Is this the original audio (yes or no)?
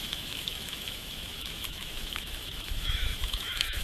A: no